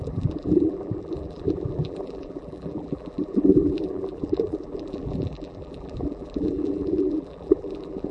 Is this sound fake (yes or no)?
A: yes